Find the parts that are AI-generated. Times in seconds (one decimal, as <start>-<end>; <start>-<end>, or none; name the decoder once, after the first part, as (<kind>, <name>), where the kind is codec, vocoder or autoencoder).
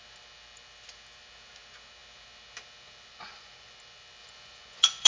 3.1-3.7 (vocoder, Vocos); 4.2-5.1